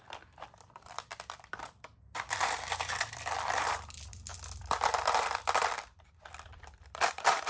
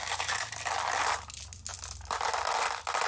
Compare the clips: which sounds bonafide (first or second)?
second